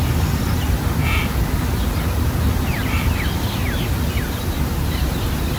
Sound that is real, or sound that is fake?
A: real